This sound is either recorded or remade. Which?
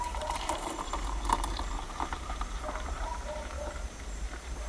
remade